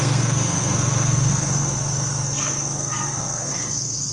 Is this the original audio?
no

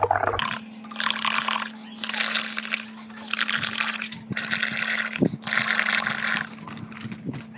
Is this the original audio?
yes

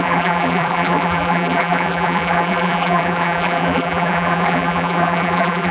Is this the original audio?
no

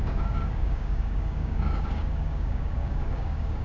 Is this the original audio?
no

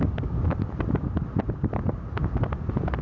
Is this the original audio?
yes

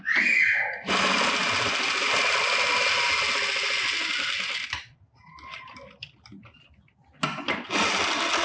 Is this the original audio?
yes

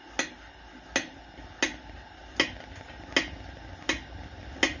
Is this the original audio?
yes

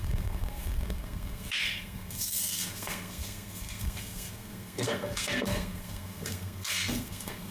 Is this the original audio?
no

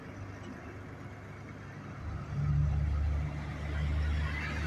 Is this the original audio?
yes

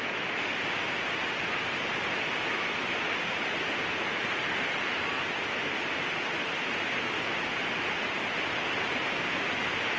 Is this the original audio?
yes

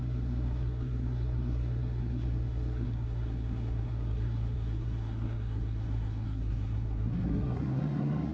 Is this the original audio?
no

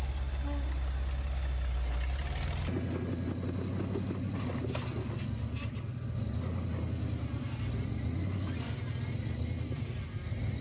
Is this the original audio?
yes